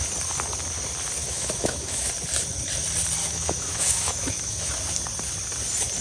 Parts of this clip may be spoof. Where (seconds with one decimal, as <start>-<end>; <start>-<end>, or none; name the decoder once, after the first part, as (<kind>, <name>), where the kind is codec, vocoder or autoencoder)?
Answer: 1.2-2.1 (autoencoder, DAC-VAE); 3.2-4.7